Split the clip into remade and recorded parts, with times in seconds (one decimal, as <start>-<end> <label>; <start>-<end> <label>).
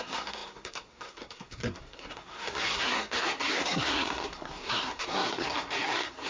0.0-6.3 remade